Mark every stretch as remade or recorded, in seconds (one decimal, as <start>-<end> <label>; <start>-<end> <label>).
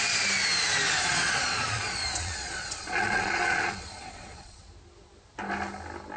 0.0-1.0 recorded; 1.0-4.6 remade; 4.6-6.2 recorded